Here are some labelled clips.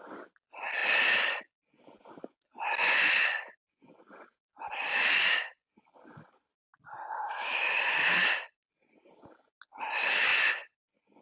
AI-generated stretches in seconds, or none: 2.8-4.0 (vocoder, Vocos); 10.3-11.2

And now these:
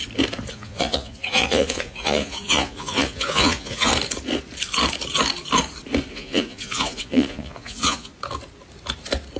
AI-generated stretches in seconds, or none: 0.5-3.9 (vocoder, Vocos); 6.1-8.1

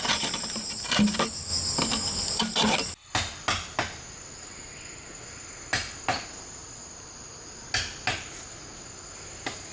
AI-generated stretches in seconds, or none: none

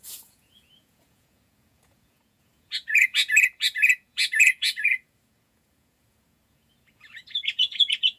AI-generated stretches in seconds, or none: 0.0-8.2 (vocoder, Vocos)

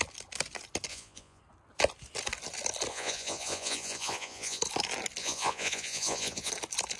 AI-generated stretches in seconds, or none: 0.9-1.4 (vocoder, Vocos); 2.9-4.6; 5.2-6.5

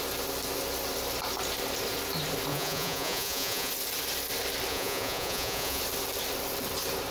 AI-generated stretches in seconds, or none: 2.5-3.7 (vocoder, Vocos); 4.7-5.8